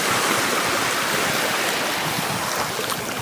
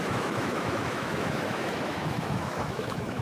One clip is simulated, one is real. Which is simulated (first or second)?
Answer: second